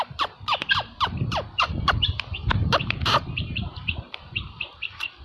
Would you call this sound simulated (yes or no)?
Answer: yes